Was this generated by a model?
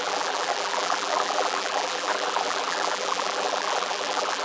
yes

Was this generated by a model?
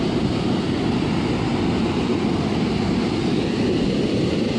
yes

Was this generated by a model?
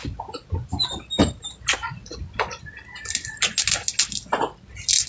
no